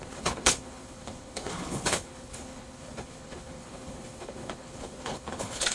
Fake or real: fake